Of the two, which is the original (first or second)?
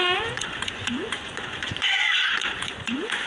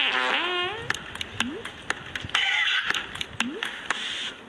second